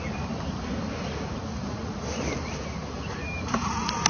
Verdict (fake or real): real